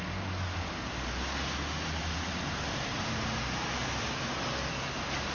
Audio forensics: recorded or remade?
recorded